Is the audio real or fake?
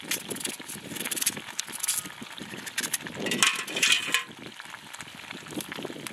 real